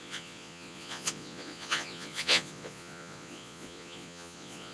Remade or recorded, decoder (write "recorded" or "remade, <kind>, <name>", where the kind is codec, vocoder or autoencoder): remade, vocoder, Vocos